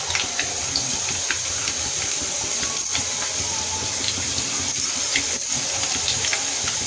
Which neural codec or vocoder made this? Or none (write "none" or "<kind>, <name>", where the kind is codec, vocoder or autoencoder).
vocoder, BigVGAN v2